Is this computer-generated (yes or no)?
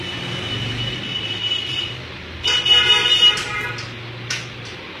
no